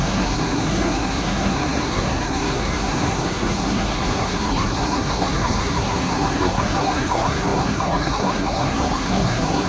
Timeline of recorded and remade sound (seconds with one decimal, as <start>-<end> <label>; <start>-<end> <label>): 0.0-9.7 remade